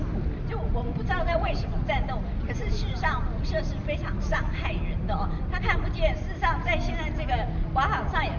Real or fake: real